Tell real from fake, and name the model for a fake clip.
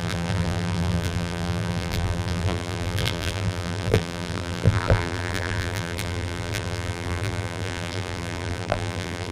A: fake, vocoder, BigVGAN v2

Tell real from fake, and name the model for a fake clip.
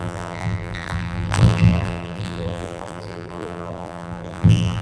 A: fake, vocoder, BigVGAN v2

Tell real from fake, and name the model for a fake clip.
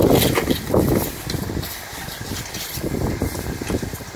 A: real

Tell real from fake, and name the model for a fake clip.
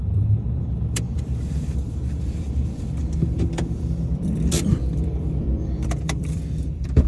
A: fake, vocoder, BigVGAN v2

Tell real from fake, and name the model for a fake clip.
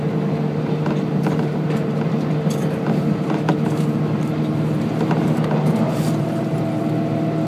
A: fake, vocoder, BigVGAN v2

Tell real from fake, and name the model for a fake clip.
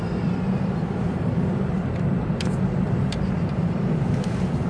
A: fake, vocoder, BigVGAN v2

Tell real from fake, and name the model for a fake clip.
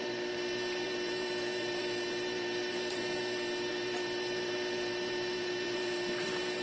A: fake, vocoder, BigVGAN v2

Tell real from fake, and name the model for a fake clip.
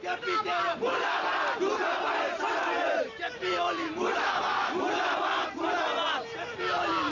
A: fake, vocoder, BigVGAN v2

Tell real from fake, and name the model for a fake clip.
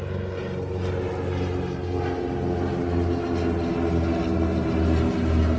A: real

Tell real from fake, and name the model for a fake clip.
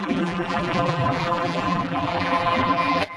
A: fake, vocoder, BigVGAN v2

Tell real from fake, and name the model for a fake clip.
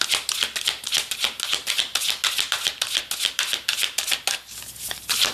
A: real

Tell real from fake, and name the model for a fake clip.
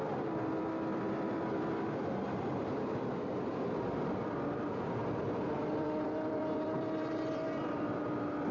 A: fake, vocoder, BigVGAN v2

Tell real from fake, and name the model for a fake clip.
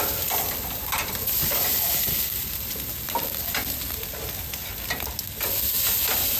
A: real